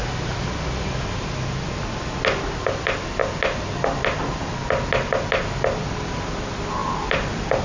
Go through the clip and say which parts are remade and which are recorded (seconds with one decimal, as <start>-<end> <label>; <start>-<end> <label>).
0.0-7.6 recorded